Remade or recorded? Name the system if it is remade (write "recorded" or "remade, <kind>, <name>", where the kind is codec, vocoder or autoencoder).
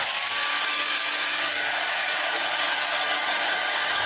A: remade, codec, DAC